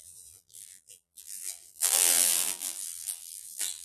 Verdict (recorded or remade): remade